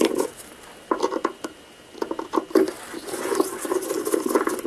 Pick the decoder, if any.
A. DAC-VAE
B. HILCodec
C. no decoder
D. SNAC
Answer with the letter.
C